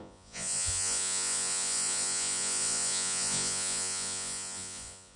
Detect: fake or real fake